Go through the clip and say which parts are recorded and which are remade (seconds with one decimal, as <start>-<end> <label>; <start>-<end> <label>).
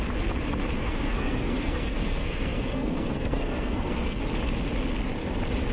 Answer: 0.0-0.8 recorded; 0.8-4.2 remade; 4.2-5.7 recorded